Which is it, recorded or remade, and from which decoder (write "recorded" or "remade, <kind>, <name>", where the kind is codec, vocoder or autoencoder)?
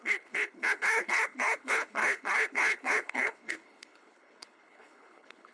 remade, codec, HILCodec